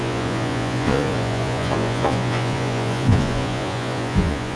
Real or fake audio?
fake